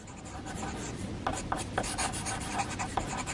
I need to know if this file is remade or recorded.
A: recorded